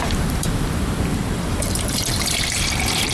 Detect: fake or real fake